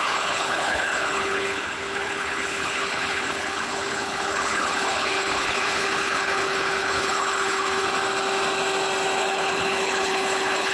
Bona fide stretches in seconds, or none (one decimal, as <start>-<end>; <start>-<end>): 7.9-9.2